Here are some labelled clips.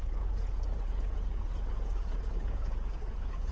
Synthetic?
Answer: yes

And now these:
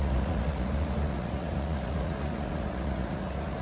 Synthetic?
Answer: yes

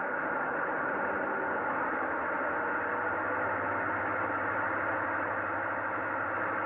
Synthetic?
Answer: no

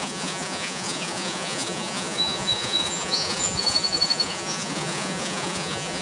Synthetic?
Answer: yes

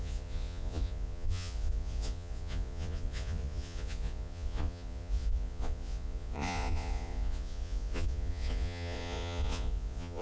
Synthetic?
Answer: yes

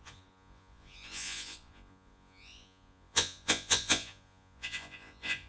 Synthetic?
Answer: yes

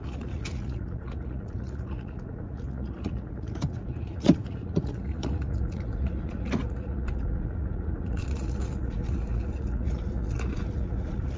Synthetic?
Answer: yes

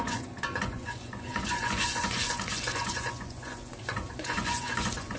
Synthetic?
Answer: yes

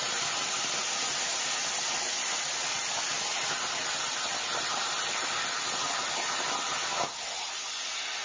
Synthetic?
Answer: no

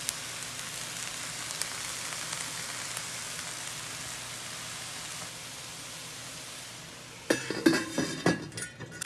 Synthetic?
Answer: no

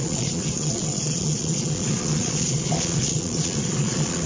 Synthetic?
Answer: yes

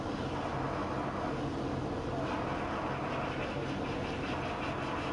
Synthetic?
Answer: no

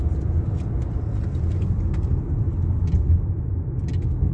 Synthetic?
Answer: no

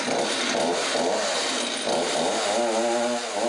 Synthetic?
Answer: no